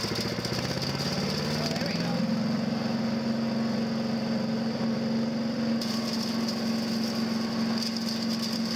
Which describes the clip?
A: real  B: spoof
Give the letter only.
A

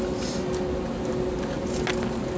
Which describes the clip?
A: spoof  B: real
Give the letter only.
B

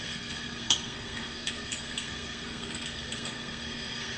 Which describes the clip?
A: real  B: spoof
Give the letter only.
B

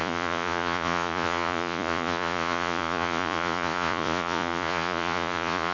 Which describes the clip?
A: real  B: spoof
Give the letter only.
B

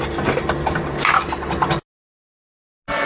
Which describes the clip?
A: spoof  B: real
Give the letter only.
B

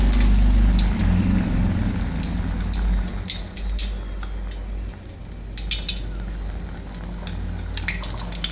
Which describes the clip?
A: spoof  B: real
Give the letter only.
B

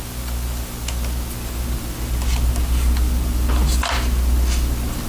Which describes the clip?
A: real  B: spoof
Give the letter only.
A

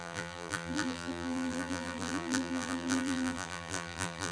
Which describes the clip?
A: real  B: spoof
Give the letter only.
B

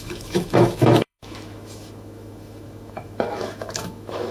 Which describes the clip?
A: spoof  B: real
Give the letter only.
A